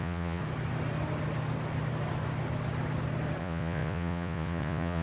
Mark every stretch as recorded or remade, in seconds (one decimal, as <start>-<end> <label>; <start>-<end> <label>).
0.0-0.4 remade; 0.4-3.4 recorded; 3.4-5.0 remade